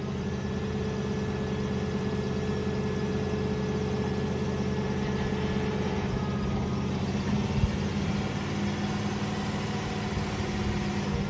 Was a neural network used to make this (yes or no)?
no